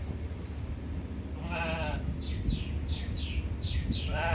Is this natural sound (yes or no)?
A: yes